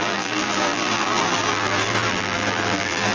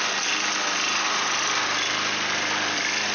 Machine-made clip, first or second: first